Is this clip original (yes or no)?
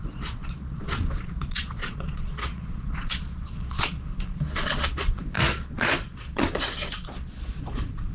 no